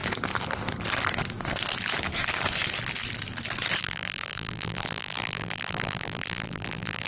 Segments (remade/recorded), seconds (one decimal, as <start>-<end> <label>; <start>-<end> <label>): 0.0-3.8 recorded; 3.8-7.1 remade